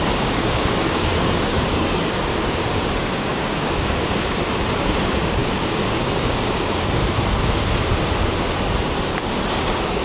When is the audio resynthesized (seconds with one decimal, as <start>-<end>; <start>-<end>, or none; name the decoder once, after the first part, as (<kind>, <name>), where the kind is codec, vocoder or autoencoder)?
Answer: 0.0-7.0 (codec, DAC); 9.5-10.0